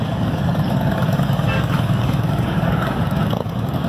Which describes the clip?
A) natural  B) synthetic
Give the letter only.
B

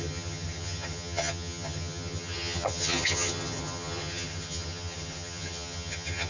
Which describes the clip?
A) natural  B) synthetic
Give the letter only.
B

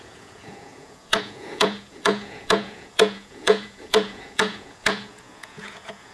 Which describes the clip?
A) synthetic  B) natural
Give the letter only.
A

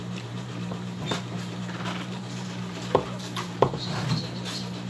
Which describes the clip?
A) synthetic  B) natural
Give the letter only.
A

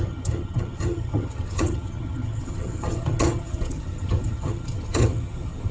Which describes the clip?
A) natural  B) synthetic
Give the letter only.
B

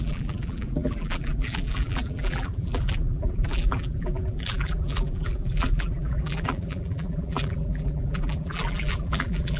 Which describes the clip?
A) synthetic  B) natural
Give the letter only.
A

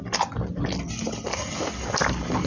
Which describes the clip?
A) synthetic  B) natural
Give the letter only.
B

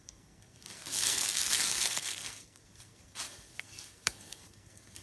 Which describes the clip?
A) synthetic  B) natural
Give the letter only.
A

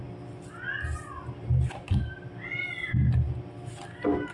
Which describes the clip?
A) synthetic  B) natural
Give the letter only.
B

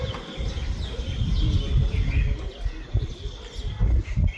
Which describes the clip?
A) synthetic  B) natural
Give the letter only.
B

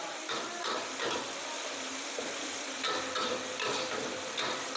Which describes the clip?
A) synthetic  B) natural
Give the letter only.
B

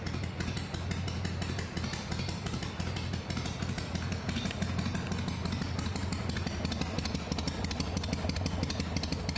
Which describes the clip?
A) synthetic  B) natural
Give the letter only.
B